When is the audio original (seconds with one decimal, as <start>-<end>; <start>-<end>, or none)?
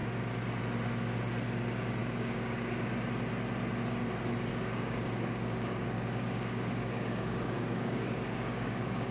0.0-2.0; 2.9-4.5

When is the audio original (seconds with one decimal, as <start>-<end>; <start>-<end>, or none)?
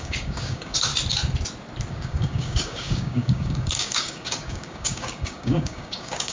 0.9-1.9